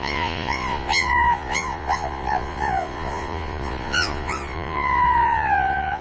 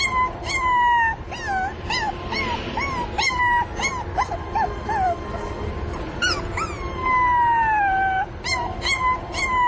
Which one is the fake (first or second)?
first